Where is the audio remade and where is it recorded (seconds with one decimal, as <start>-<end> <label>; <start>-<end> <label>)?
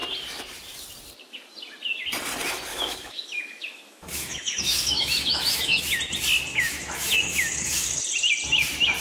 0.0-2.7 recorded; 2.7-6.0 remade; 6.0-6.5 recorded; 6.5-8.0 remade; 8.0-9.0 recorded